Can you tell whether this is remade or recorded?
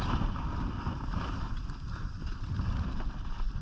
recorded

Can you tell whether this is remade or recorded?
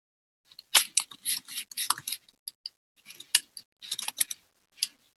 recorded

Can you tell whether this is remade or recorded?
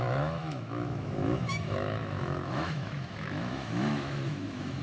remade